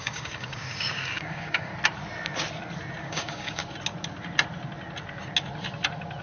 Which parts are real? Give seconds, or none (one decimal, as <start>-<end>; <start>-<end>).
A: 1.7-3.0; 3.6-6.2